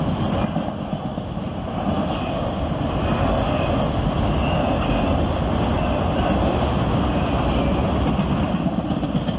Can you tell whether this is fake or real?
real